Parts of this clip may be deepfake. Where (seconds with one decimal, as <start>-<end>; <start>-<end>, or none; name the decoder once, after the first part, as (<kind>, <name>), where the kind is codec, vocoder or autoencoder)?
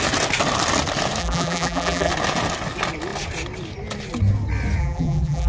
1.2-2.1 (vocoder, BigVGAN v2); 4.8-5.5